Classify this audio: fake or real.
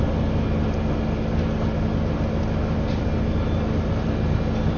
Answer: real